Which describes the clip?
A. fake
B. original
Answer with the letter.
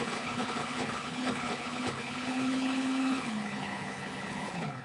A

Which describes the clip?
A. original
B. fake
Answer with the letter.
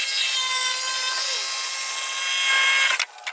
A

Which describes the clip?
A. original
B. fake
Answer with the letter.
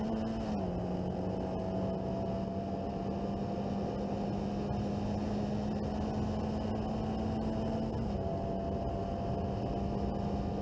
A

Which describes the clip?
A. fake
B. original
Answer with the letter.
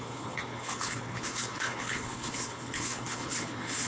A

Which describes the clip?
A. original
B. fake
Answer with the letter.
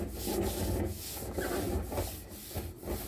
A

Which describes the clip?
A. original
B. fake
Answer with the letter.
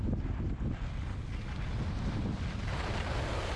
A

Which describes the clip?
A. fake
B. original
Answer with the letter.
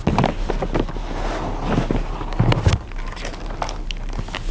B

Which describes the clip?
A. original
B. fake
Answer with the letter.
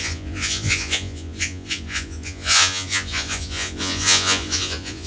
B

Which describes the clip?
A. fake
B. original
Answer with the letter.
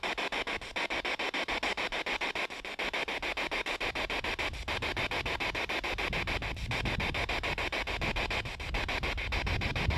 B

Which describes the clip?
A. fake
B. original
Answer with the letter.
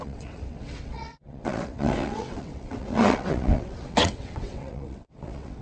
A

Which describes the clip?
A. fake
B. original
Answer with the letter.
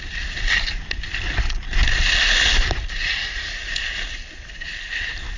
B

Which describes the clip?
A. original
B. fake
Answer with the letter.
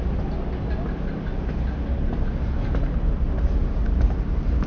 A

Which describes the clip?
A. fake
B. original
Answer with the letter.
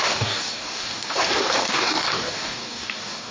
A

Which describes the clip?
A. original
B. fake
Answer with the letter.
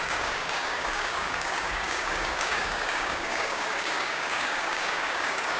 B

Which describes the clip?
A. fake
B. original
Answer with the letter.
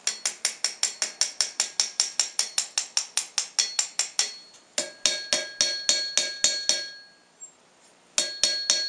B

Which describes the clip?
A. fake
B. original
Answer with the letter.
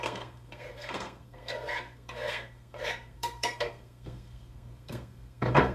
A